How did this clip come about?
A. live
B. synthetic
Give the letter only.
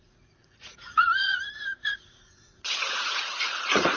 B